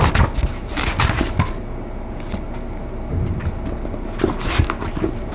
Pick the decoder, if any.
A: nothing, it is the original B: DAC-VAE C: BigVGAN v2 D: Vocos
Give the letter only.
A